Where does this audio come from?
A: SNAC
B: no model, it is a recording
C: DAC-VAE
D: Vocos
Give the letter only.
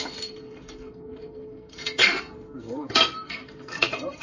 A